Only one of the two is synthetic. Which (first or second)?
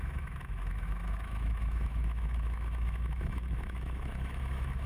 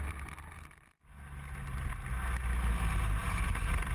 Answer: first